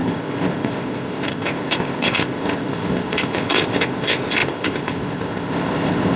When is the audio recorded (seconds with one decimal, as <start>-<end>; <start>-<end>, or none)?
none